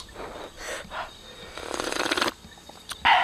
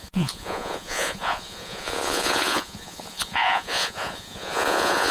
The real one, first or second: first